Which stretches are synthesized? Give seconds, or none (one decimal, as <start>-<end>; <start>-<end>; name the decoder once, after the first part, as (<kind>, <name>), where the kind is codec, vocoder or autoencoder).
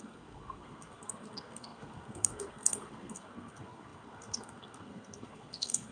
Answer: 0.0-5.9 (codec, SNAC)